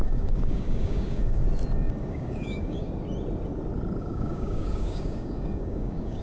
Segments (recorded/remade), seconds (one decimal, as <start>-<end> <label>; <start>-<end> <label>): 0.0-1.4 remade; 1.4-2.1 recorded; 2.1-2.9 remade; 2.9-4.0 recorded; 4.0-6.2 remade